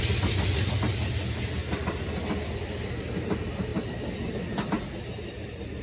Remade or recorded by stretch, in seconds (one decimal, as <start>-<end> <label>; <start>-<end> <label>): 0.0-5.8 recorded